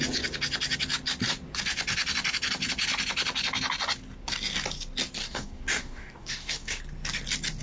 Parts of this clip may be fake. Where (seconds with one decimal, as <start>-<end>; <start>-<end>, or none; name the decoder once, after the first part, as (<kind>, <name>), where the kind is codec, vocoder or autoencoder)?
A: 5.2-6.8 (codec, DAC)